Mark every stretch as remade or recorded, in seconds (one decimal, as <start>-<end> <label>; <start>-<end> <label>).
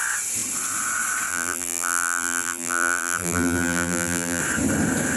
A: 0.0-1.3 recorded; 1.3-4.4 remade; 4.4-5.2 recorded